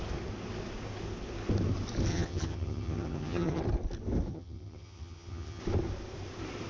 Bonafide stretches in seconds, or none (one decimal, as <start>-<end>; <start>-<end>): 0.0-2.1; 3.6-4.3; 5.6-6.7